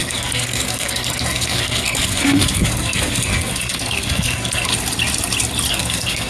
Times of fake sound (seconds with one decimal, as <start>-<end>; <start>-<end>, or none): 0.0-4.7; 5.7-6.3